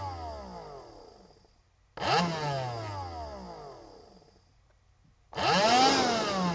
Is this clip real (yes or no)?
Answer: yes